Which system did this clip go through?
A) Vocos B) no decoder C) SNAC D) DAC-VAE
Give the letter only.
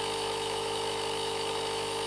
D